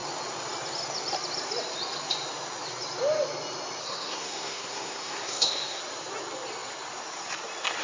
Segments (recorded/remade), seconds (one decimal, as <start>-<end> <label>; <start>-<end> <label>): 0.0-3.8 recorded; 3.8-5.8 remade; 5.8-7.8 recorded